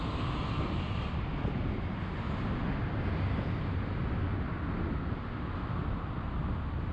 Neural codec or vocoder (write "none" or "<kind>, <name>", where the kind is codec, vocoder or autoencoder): none